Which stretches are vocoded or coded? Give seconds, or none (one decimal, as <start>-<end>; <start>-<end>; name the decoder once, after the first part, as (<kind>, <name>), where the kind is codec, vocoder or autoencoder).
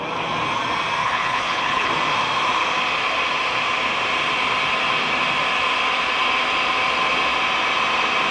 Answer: 1.0-1.9 (codec, HILCodec)